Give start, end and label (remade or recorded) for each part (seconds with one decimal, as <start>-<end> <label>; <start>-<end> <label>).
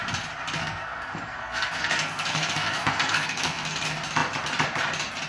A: 0.0-0.6 recorded; 0.6-3.8 remade; 3.8-5.3 recorded